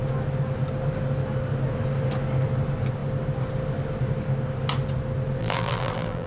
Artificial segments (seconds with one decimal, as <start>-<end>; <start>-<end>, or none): 5.4-6.3